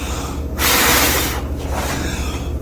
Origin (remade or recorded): recorded